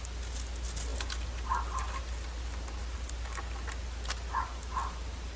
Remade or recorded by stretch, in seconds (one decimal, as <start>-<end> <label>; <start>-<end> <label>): 0.0-0.9 recorded; 0.9-2.0 remade; 2.0-5.4 recorded